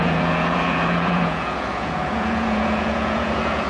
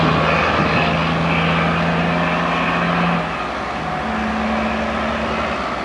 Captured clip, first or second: second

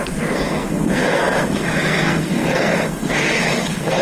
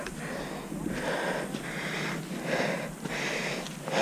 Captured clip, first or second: second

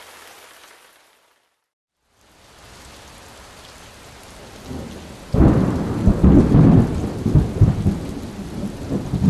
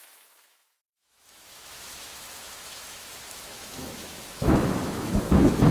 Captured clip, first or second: first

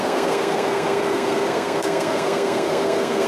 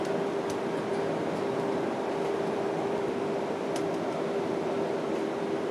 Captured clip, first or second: second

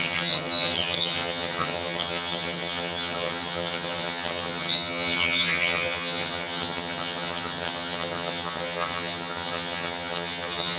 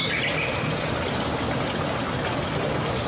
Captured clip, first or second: second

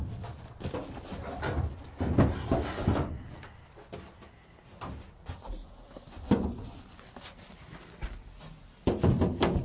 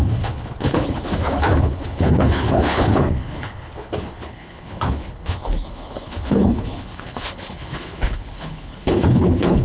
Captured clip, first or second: first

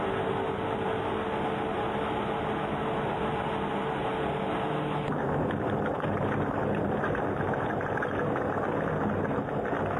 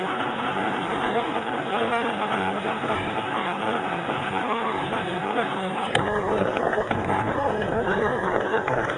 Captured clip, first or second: first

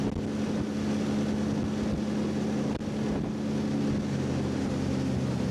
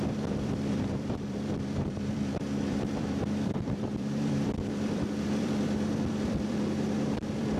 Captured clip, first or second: first